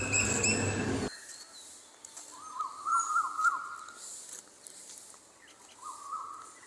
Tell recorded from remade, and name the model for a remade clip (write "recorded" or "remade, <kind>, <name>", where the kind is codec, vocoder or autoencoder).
recorded